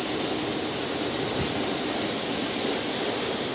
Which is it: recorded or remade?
recorded